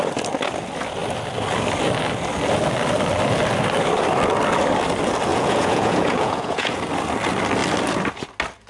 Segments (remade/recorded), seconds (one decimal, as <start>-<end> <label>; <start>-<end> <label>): 0.0-5.3 recorded; 5.3-6.8 remade; 6.8-8.7 recorded